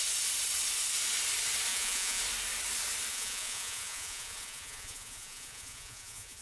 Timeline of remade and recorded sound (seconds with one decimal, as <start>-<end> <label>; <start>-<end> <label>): 0.0-1.7 recorded; 1.7-2.2 remade; 2.2-3.1 recorded; 3.1-6.4 remade